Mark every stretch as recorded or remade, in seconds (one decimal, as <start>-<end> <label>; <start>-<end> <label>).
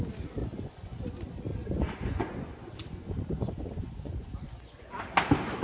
0.0-0.4 recorded; 0.4-1.0 remade; 1.0-1.5 recorded; 1.5-4.9 remade; 4.9-5.6 recorded